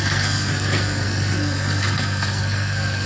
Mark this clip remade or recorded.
remade